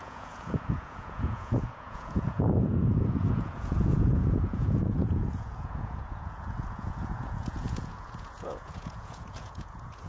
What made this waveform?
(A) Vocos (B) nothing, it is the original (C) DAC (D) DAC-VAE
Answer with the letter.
A